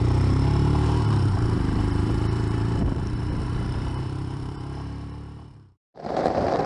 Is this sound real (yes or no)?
no